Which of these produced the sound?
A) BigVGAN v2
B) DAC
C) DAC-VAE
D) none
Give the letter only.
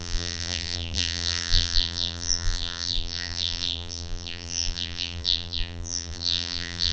A